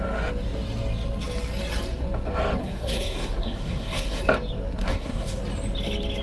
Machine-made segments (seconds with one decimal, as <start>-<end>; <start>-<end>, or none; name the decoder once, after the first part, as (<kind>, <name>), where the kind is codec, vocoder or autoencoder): 2.6-4.2 (codec, SNAC); 4.8-5.4